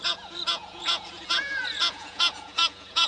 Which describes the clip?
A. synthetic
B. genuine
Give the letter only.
A